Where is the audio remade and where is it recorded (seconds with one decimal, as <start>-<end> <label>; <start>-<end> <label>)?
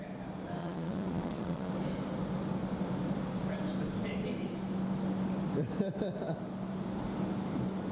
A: 0.0-0.6 recorded; 0.6-1.7 remade; 1.7-7.9 recorded